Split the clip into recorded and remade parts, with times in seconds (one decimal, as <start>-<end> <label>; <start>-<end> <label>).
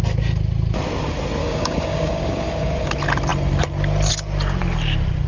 0.0-1.4 recorded; 1.4-2.9 remade; 2.9-5.3 recorded